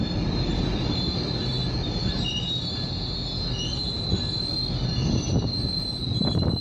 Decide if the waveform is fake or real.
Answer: real